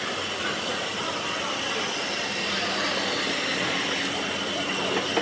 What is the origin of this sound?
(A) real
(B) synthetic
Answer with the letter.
A